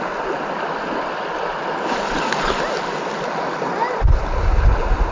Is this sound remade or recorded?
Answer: recorded